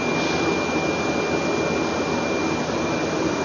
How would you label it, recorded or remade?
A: recorded